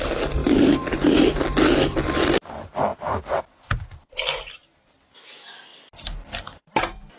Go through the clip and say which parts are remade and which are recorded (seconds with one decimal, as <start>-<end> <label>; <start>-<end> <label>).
0.0-0.4 recorded; 0.4-1.4 remade; 1.4-2.9 recorded; 2.9-3.4 remade; 3.4-7.2 recorded